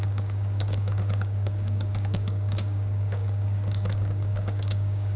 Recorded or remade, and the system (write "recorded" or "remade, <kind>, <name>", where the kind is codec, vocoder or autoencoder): remade, codec, DAC